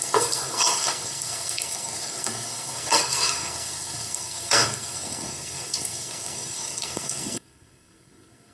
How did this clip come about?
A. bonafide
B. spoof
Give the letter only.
B